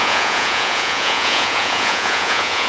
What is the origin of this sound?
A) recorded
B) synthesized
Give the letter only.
B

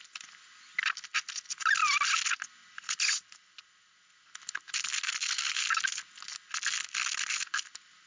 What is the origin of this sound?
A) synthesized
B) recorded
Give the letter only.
B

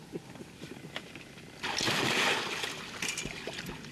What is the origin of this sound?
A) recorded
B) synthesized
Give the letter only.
A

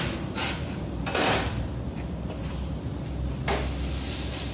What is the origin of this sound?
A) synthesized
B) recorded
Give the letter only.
B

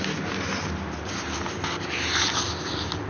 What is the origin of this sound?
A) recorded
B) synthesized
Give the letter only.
A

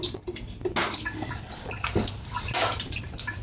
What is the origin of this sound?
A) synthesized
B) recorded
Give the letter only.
B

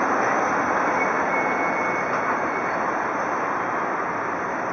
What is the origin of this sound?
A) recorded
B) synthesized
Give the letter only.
A